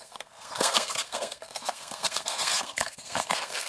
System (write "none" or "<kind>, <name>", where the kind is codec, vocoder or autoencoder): codec, SNAC